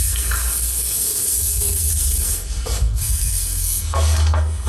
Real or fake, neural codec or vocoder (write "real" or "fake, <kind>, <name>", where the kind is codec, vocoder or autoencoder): fake, codec, SNAC